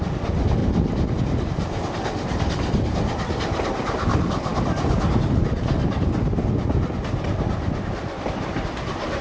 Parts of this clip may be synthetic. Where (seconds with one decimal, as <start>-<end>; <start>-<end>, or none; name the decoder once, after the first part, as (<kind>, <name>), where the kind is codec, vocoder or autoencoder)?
0.6-1.2 (vocoder, BigVGAN v2)